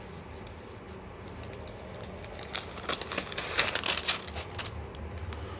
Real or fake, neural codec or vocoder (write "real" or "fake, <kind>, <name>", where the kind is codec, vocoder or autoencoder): real